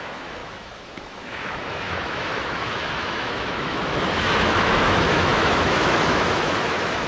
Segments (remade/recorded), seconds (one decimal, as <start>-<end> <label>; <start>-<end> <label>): 0.0-7.1 remade